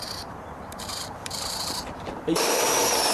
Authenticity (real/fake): fake